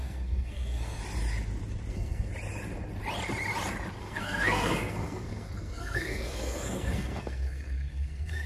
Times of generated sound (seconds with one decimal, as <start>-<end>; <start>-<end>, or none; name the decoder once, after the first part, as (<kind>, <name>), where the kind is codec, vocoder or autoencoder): 0.0-1.0 (codec, SNAC); 1.9-2.3; 4.0-8.5